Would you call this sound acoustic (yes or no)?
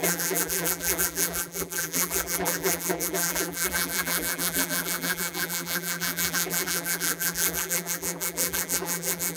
no